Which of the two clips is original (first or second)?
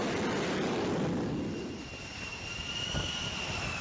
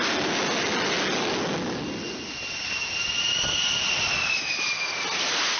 second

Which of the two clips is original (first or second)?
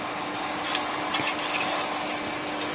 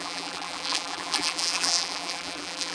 first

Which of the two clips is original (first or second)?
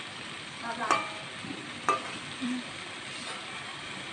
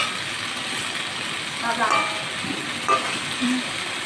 second